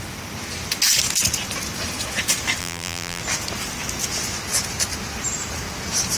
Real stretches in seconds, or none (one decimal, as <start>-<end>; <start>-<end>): 0.0-2.6; 3.2-6.2